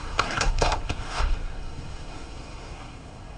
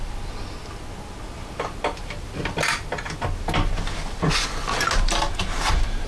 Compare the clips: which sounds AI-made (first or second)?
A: first